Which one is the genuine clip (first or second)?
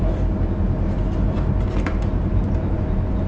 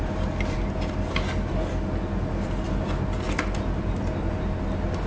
second